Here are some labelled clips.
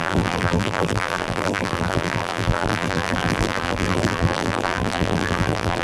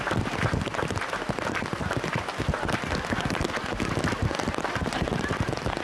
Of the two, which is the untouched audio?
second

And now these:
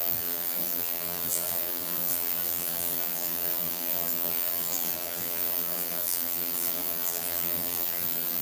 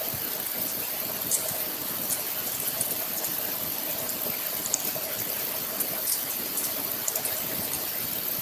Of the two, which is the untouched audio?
second